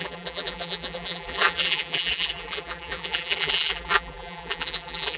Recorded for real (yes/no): no